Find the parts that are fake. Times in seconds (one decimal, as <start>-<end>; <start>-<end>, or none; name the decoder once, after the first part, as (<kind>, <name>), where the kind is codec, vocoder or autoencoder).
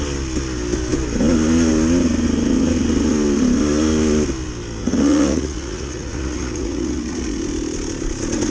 4.8-7.4 (vocoder, Vocos)